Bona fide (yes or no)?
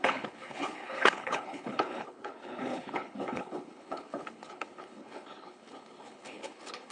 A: no